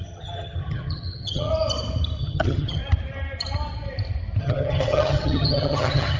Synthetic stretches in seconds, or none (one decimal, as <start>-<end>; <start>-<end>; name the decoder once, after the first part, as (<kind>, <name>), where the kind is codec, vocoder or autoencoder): 0.0-1.5 (vocoder, HiFi-GAN); 2.2-2.8; 4.4-6.2